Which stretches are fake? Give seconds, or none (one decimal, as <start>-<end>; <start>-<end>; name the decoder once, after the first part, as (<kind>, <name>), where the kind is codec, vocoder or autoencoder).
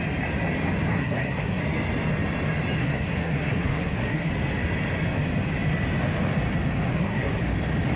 0.9-1.6 (codec, SNAC); 2.8-4.3; 6.9-7.4